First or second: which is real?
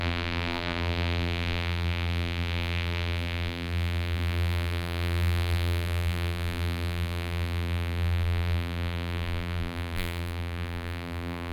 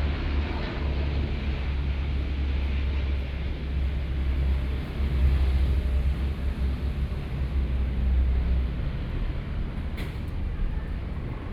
second